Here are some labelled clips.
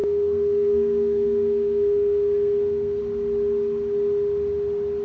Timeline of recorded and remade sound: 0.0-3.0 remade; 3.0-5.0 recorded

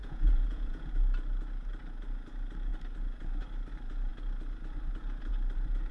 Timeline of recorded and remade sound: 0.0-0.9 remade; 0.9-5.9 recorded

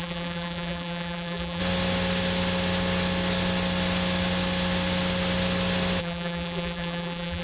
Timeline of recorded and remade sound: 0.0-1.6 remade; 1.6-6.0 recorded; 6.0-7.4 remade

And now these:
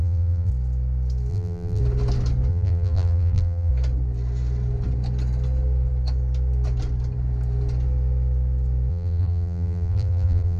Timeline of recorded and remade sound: 0.0-0.5 remade; 0.5-1.3 recorded; 1.3-1.8 remade; 1.8-2.5 recorded; 2.5-3.7 remade; 3.7-8.9 recorded; 8.9-10.6 remade